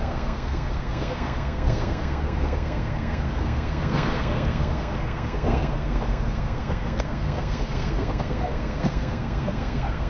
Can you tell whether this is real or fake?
fake